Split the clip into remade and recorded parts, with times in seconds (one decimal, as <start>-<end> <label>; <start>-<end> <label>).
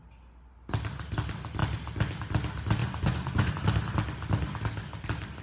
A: 0.0-2.8 recorded; 2.8-3.5 remade; 3.5-5.4 recorded